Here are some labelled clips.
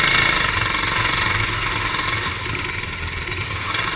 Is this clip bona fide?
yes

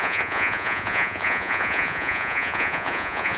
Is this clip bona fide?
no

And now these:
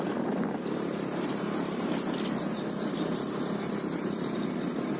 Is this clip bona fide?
yes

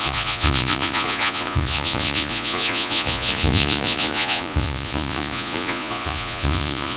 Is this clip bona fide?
no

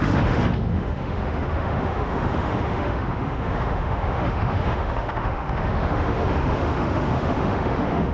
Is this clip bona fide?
no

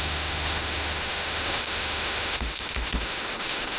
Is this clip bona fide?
no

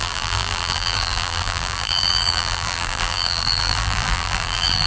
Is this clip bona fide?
no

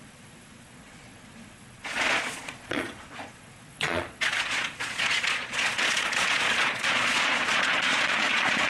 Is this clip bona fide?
no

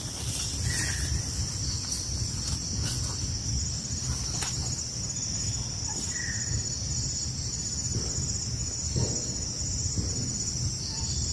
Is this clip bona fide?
yes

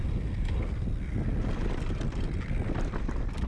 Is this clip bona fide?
yes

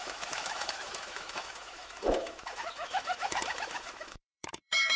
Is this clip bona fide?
no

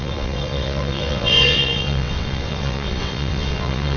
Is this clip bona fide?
no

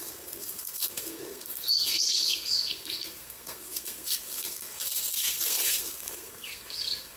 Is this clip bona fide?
no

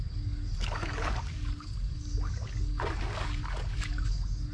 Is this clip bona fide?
no